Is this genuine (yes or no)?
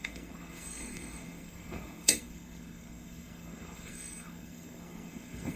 no